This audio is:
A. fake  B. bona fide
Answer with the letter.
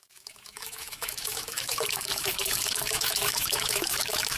A